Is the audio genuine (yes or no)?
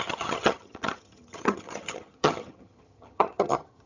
no